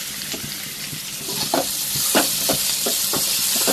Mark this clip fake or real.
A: real